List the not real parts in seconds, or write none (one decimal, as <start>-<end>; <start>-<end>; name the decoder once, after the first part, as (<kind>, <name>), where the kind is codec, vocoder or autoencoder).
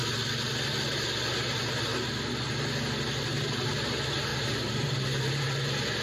4.3-5.4 (vocoder, BigVGAN v2)